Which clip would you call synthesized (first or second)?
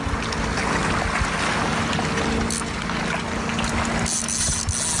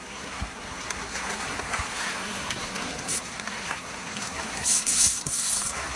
second